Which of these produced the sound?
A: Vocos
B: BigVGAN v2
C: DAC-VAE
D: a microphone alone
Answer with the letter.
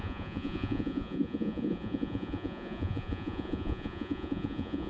A